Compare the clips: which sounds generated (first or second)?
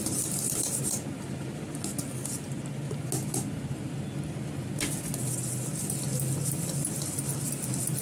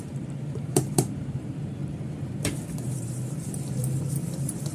second